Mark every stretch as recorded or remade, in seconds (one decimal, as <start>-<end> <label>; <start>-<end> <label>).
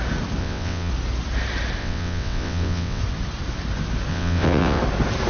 0.0-0.4 recorded; 0.4-0.9 remade; 0.9-1.8 recorded; 1.8-3.0 remade; 3.0-4.1 recorded; 4.1-4.8 remade; 4.8-5.3 recorded